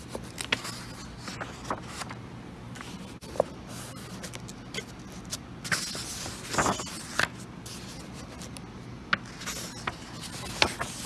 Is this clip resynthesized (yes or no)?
no